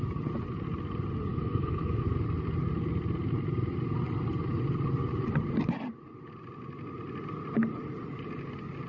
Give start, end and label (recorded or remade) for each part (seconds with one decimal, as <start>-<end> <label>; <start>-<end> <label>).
0.0-1.3 recorded; 1.3-2.1 remade; 2.1-8.9 recorded